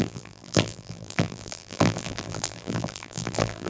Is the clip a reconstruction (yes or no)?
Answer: yes